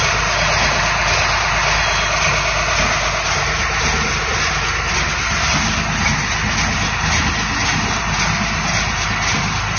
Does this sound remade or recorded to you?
recorded